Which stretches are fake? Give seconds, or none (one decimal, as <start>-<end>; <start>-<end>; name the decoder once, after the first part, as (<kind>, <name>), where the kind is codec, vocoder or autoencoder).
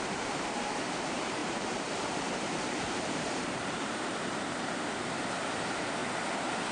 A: 0.0-6.0 (vocoder, BigVGAN v2)